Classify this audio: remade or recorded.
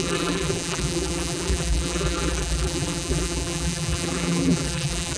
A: remade